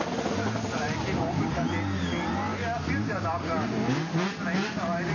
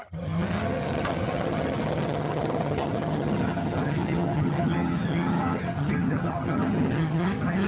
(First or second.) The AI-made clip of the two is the second